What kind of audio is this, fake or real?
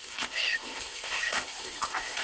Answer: fake